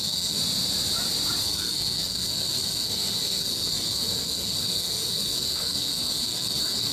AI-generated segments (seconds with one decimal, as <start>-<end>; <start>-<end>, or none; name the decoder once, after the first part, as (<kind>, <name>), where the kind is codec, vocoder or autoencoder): 0.0-0.4 (codec, SNAC); 1.4-6.9